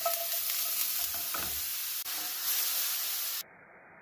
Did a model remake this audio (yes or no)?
no